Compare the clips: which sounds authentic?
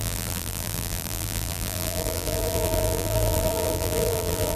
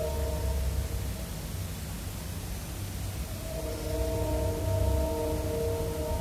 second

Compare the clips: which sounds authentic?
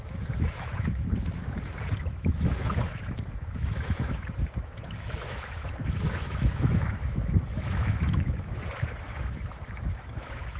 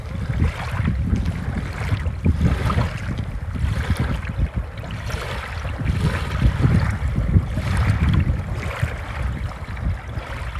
second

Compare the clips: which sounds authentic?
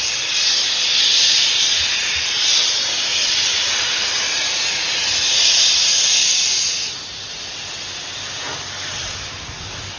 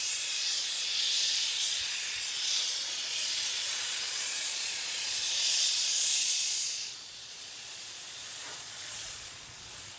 first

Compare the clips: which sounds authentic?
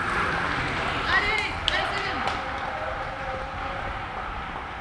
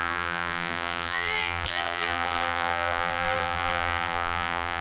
first